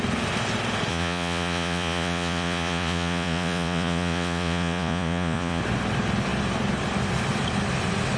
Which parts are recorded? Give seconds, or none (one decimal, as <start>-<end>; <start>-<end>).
0.0-0.9; 5.6-8.2